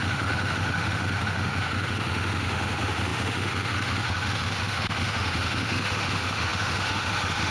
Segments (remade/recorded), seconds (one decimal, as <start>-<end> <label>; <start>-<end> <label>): 0.0-7.5 remade